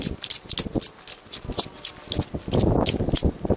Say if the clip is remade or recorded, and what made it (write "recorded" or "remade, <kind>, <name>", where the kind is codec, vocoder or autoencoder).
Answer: recorded